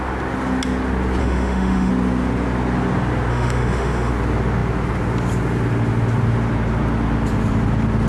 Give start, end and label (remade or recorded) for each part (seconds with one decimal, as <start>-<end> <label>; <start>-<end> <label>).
0.0-1.2 recorded; 1.2-1.9 remade; 1.9-3.3 recorded; 3.3-4.1 remade; 4.1-8.1 recorded